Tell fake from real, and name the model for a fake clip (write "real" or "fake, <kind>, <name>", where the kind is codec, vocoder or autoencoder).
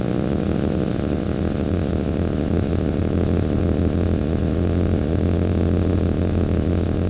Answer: fake, codec, ZipCodec